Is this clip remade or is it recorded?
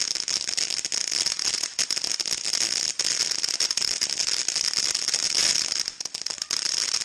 recorded